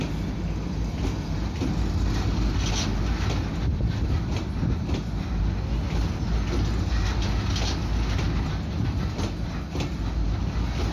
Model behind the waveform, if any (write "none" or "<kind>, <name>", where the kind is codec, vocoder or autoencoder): none